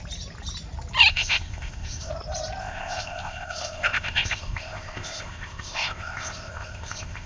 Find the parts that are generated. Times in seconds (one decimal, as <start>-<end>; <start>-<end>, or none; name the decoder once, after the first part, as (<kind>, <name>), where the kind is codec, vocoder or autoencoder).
1.1-2.1 (codec, ZipCodec); 2.6-7.3